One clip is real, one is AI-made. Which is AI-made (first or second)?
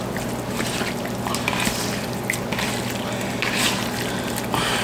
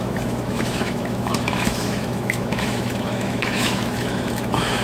second